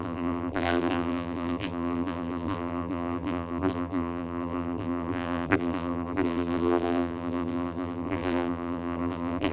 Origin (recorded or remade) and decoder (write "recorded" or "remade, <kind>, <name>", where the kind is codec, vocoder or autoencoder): remade, vocoder, BigVGAN v2